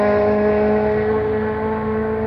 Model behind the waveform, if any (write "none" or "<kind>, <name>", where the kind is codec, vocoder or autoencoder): none